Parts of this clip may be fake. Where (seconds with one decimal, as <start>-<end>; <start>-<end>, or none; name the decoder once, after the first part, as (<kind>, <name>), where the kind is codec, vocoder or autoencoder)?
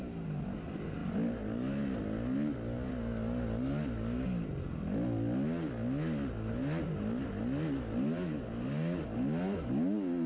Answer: none